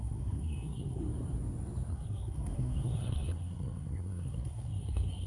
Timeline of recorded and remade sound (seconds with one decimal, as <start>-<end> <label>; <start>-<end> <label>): 0.0-1.0 remade; 1.0-1.9 recorded; 1.9-5.3 remade